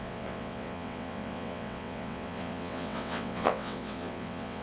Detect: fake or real fake